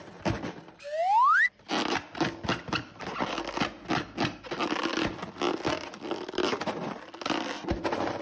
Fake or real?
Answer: real